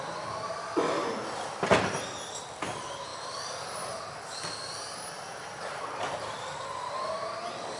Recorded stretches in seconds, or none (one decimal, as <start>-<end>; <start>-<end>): 0.0-7.8